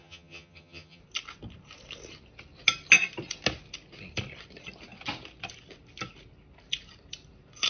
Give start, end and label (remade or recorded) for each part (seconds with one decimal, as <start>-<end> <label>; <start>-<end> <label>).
0.0-1.0 remade; 1.0-7.7 recorded